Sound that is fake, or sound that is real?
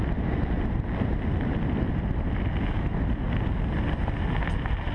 real